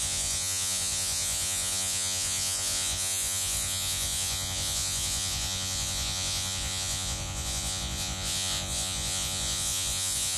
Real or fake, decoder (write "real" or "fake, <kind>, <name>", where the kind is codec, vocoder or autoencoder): fake, vocoder, Vocos